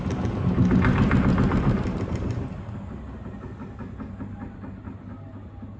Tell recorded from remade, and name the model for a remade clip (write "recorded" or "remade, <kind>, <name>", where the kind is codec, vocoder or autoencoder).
recorded